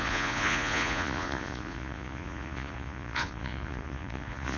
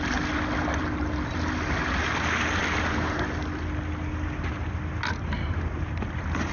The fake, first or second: first